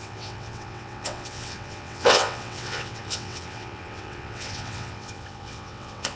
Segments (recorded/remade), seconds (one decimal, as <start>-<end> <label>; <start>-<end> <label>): 0.0-6.2 remade